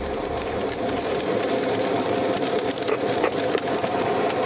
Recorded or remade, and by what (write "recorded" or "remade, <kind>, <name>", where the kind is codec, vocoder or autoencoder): remade, vocoder, BigVGAN v2